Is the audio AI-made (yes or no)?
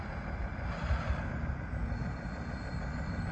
no